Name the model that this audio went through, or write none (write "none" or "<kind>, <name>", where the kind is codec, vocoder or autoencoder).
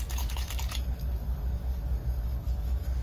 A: codec, DAC